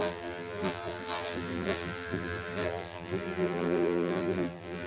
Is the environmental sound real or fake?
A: fake